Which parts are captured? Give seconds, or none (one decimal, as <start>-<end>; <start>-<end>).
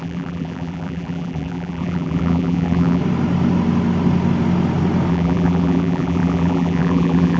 3.0-5.1